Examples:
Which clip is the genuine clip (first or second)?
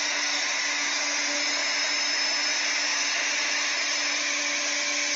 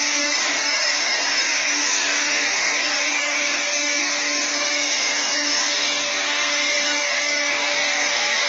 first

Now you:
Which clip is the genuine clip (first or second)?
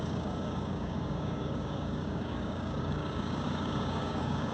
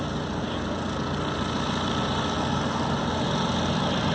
second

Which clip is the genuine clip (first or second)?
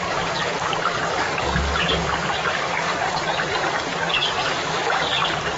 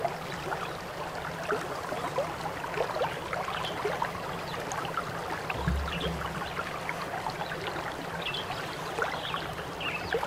second